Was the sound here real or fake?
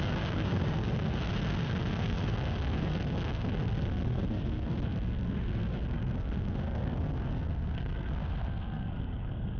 fake